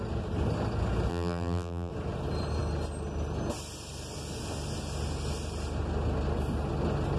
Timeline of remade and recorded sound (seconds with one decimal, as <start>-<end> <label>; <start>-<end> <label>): 0.0-1.1 recorded; 1.1-1.9 remade; 1.9-7.2 recorded

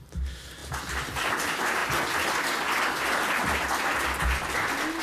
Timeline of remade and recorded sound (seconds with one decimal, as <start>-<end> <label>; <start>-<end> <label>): 0.0-1.8 remade; 1.8-5.0 recorded

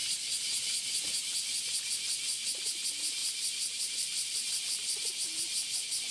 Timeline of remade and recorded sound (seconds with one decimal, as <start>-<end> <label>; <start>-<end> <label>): 0.0-3.2 recorded; 3.2-5.1 remade; 5.1-6.1 recorded

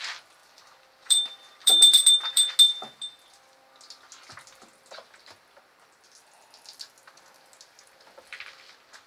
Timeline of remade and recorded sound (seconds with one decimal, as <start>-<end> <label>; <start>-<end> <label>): 0.0-0.4 recorded; 0.4-2.5 remade; 2.5-9.1 recorded